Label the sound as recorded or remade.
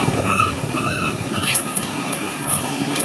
remade